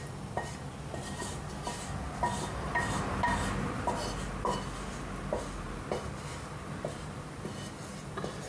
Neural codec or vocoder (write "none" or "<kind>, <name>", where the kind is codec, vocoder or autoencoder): vocoder, BigVGAN v2